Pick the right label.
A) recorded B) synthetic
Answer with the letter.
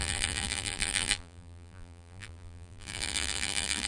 B